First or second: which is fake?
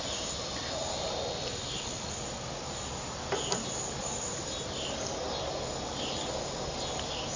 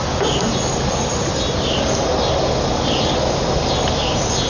first